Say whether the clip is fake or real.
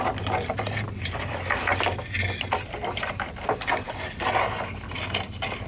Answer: real